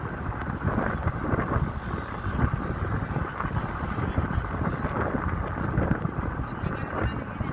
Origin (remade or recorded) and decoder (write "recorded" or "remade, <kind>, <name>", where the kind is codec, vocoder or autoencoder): recorded